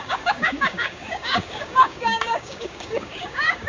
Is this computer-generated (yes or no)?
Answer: yes